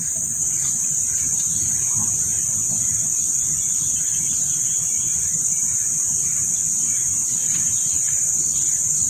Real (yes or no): yes